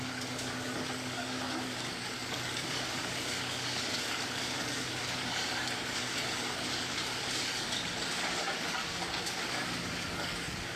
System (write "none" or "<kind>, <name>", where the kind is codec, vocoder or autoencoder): codec, DAC